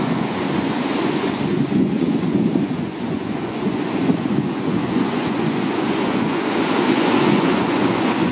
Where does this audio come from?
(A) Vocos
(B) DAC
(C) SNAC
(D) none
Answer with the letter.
A